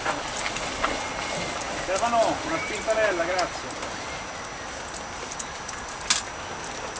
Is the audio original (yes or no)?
yes